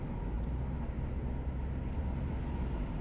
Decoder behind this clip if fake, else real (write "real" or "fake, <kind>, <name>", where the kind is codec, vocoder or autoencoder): real